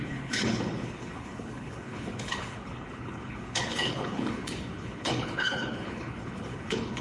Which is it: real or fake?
fake